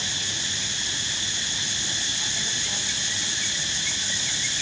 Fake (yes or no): no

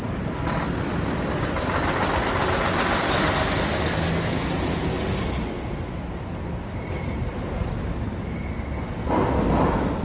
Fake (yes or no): no